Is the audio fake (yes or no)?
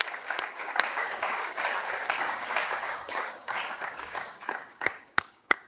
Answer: yes